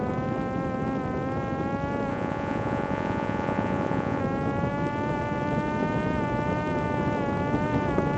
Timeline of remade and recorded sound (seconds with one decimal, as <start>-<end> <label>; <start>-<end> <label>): 0.0-2.1 recorded; 2.1-4.2 remade; 4.2-8.2 recorded